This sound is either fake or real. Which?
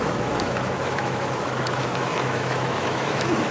fake